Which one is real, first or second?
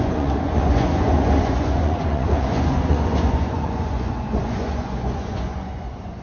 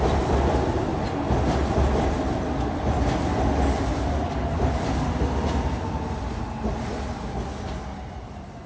second